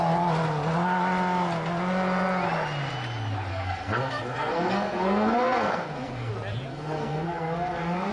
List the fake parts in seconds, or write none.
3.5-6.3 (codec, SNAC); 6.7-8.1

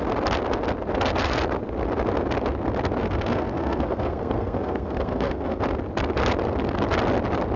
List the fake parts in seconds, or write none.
3.0-5.6 (codec, SNAC)

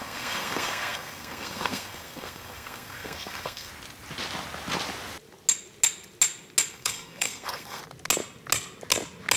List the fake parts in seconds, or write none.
0.0-3.7 (codec, SNAC); 6.7-7.8

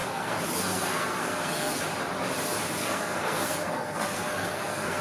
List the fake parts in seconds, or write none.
0.0-1.8 (codec, SNAC); 2.8-5.0

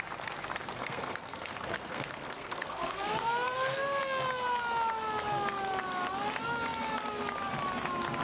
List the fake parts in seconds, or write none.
0.8-4.0 (codec, SNAC)

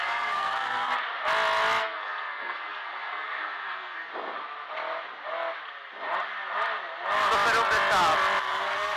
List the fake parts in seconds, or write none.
0.0-0.9 (codec, SNAC); 1.8-4.1; 8.4-9.0

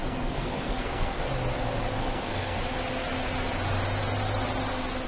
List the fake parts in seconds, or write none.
0.0-1.2 (codec, SNAC); 2.0-2.6